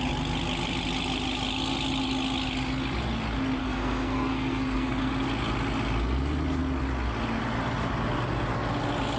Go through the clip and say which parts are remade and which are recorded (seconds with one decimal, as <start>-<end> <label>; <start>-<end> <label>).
0.0-3.6 recorded; 3.6-5.1 remade; 5.1-9.2 recorded